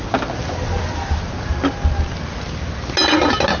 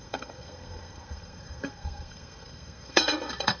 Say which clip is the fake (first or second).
second